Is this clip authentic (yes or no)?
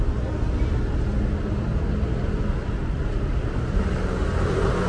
yes